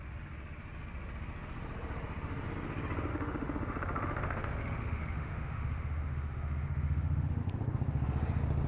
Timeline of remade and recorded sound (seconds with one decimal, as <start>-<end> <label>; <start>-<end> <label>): 0.0-3.1 recorded; 3.1-7.4 remade; 7.4-8.7 recorded